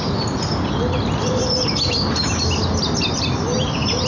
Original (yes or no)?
yes